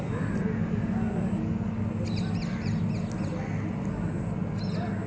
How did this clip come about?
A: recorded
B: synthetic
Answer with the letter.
A